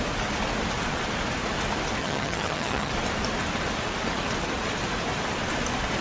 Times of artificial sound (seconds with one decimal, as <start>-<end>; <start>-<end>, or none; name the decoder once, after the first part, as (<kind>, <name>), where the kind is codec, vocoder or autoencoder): 2.0-2.9 (vocoder, HiFi-GAN)